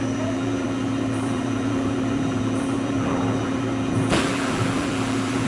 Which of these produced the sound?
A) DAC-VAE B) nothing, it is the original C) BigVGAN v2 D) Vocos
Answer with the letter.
C